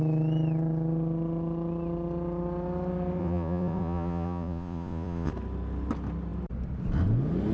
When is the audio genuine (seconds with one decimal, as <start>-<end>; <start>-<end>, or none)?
0.0-3.2; 5.3-7.5